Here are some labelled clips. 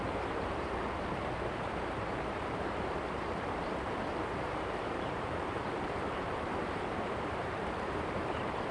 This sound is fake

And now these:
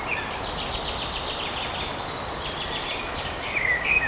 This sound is real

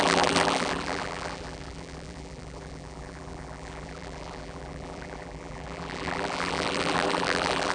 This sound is fake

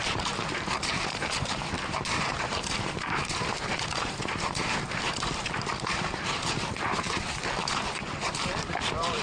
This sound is fake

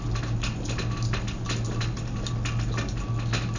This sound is real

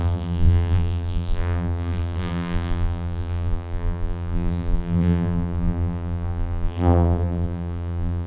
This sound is fake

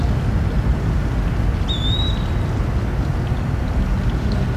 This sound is real